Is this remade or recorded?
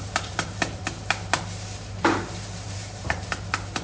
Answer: remade